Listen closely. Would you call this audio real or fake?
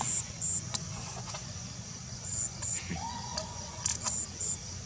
fake